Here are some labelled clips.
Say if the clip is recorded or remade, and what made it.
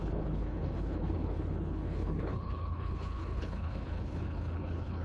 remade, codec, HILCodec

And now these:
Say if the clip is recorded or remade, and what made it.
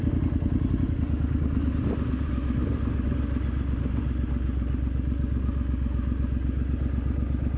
recorded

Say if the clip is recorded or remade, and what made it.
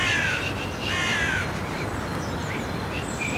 recorded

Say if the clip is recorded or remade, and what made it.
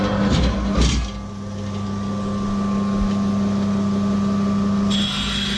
recorded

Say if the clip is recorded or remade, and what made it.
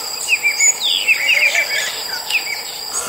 recorded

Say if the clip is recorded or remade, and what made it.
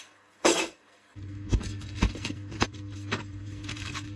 remade, codec, SNAC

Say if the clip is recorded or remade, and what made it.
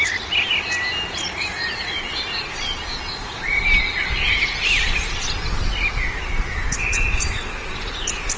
recorded